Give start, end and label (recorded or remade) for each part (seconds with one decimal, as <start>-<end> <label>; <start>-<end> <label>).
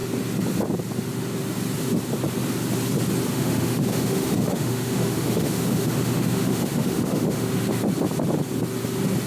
0.0-3.3 recorded; 3.3-7.5 remade; 7.5-9.3 recorded